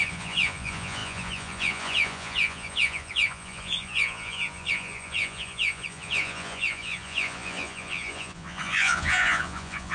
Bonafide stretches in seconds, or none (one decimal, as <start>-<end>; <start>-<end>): none